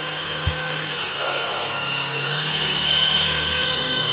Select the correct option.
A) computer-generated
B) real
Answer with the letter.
A